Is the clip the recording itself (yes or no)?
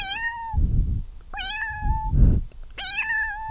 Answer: yes